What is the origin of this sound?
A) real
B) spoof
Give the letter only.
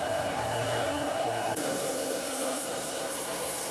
B